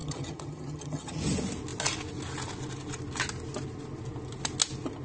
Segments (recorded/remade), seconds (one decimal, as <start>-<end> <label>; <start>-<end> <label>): 0.0-1.2 remade; 1.2-5.0 recorded